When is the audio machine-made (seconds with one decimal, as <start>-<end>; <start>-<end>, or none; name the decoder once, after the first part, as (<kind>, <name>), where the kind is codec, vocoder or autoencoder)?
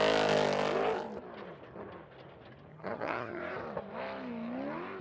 2.7-3.4 (vocoder, HiFi-GAN)